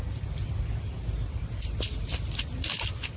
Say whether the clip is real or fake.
real